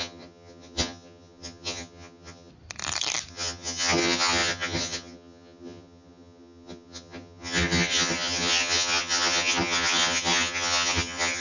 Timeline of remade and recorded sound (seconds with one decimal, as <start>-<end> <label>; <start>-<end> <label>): 0.0-2.5 remade; 2.5-3.3 recorded; 3.3-11.4 remade

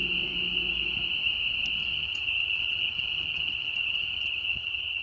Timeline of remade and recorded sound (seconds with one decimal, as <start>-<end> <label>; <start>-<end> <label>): 0.0-1.8 recorded; 1.8-5.0 remade

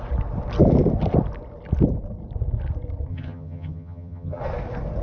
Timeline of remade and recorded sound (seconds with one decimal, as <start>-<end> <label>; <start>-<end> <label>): 0.0-3.1 recorded; 3.1-4.4 remade; 4.4-5.0 recorded